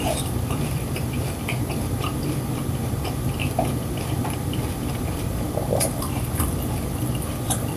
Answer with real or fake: fake